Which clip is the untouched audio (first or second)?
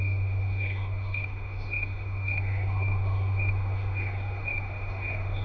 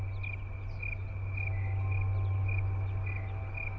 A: second